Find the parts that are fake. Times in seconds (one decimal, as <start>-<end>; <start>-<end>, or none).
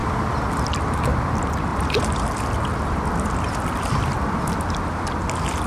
1.7-4.5